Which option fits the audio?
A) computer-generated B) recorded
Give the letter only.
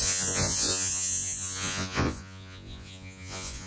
A